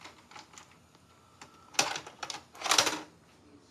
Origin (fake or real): real